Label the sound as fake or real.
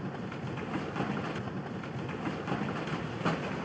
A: real